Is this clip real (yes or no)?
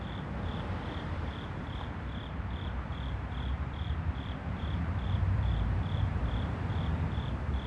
no